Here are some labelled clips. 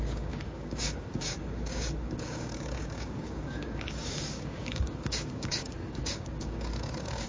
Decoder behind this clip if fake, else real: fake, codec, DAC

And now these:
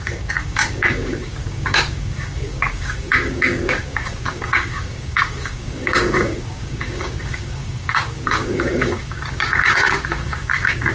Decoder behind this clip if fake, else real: fake, codec, DAC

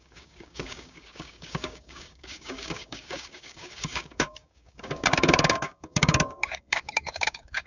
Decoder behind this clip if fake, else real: fake, codec, DAC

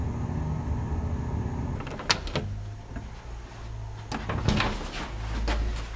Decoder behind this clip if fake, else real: real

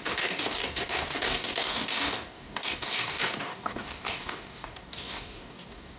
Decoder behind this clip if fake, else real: fake, codec, DAC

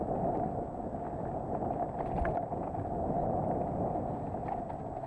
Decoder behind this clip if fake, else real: real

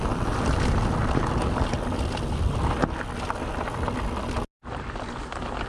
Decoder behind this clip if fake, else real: real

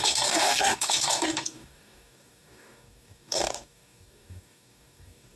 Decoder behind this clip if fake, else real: fake, codec, DAC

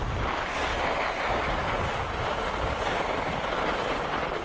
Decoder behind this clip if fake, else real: real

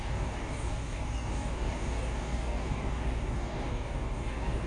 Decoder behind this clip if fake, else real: fake, codec, DAC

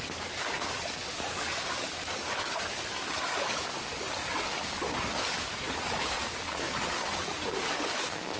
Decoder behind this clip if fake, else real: fake, codec, DAC